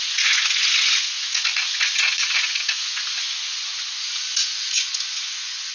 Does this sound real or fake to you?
fake